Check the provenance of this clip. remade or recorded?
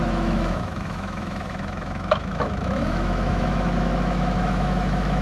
remade